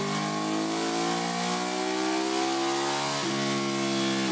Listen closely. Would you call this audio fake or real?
real